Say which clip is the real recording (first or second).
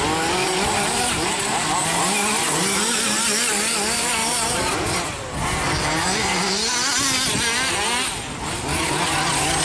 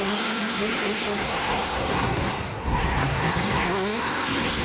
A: first